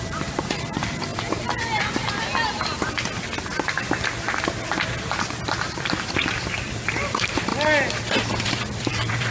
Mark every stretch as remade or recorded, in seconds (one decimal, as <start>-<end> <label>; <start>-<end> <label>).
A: 0.0-1.1 remade; 1.1-6.1 recorded; 6.1-7.5 remade; 7.5-8.0 recorded; 8.0-9.3 remade